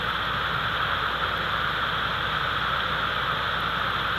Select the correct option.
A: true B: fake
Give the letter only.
A